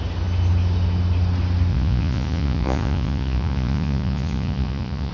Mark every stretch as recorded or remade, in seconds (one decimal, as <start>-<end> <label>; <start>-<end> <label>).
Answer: 0.0-1.7 recorded; 1.7-5.1 remade